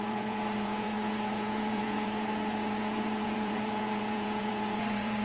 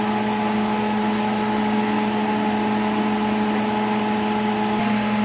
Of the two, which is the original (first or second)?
second